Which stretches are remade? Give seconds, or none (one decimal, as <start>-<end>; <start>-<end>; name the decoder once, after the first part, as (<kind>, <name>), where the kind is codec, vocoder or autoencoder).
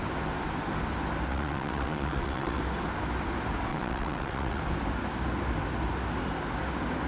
1.3-2.6 (vocoder, WaveNeXt); 3.7-4.6